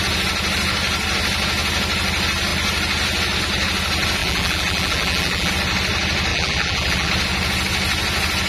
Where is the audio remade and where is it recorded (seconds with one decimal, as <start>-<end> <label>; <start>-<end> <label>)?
0.0-4.2 recorded; 4.2-5.5 remade; 5.5-6.3 recorded; 6.3-7.1 remade; 7.1-8.5 recorded